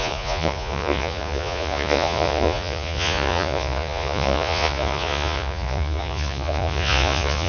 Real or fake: fake